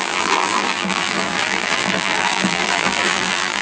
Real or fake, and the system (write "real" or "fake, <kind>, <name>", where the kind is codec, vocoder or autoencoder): fake, vocoder, BigVGAN v2